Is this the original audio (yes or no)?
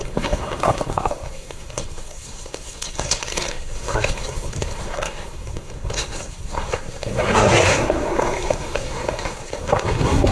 no